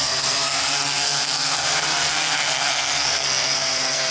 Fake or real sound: fake